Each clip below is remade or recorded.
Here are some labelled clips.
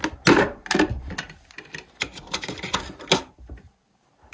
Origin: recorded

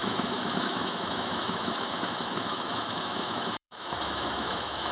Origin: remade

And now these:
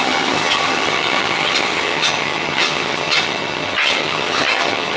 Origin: remade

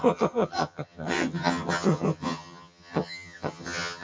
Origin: remade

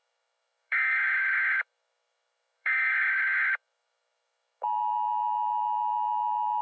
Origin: remade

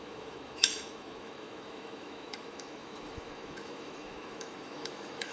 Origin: remade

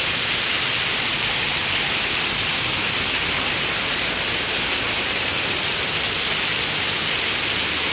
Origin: recorded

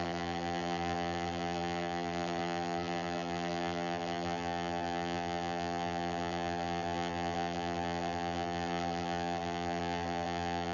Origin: remade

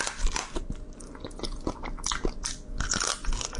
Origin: recorded